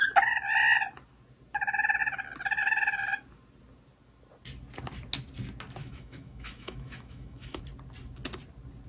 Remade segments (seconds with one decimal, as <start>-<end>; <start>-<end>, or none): 5.8-7.6